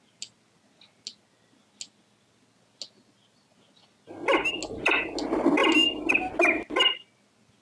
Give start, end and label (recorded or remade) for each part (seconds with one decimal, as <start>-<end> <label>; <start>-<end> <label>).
0.0-7.6 recorded